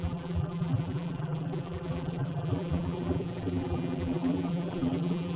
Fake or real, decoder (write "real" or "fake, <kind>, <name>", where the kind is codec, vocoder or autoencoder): fake, vocoder, BigVGAN v2